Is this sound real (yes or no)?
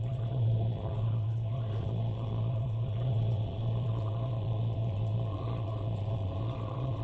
no